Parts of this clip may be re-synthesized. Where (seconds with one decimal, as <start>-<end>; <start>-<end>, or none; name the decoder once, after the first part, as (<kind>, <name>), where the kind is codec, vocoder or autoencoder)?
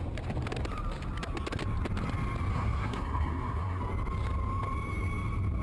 2.5-3.8 (codec, SNAC)